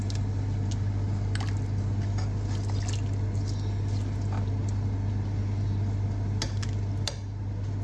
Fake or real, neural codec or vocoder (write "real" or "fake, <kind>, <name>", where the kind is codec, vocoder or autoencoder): real